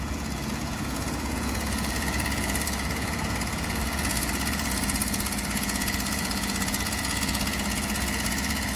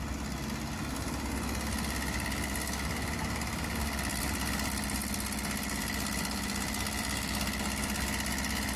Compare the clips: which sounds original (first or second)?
second